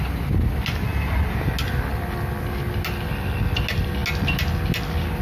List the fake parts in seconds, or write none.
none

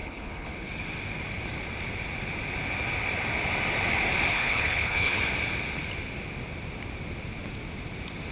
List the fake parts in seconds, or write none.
0.0-0.7 (codec, HILCodec); 4.3-5.2

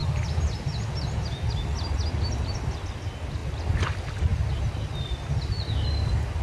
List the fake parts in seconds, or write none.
none

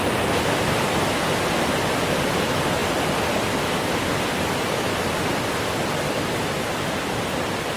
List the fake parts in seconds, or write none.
none